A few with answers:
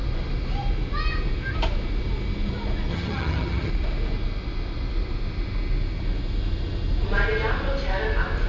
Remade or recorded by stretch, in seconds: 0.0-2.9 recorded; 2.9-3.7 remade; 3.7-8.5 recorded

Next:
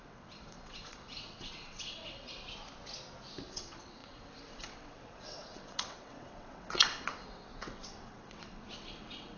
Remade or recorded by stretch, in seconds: 0.0-2.3 remade; 2.3-3.5 recorded; 3.5-9.4 remade

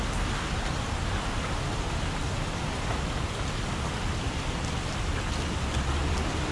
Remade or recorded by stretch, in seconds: 0.0-6.5 recorded

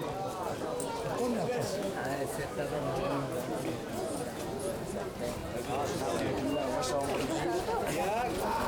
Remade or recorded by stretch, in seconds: 0.0-1.3 recorded; 1.3-3.3 remade; 3.3-8.7 recorded

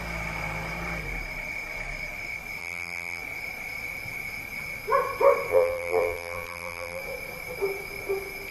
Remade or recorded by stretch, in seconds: 0.0-2.6 recorded; 2.6-3.2 remade; 3.2-5.5 recorded; 5.5-7.0 remade; 7.0-8.5 recorded

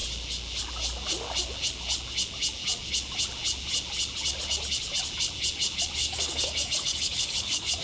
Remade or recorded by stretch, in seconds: 0.0-6.0 recorded; 6.0-7.8 remade